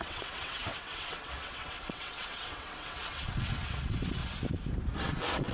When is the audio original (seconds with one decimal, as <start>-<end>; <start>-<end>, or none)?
4.2-5.0